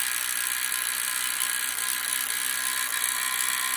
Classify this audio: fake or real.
real